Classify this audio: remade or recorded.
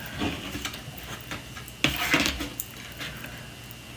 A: recorded